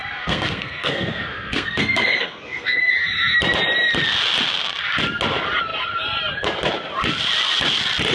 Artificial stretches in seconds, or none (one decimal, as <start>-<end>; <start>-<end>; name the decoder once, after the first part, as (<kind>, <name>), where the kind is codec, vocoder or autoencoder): 0.0-2.9 (codec, SNAC)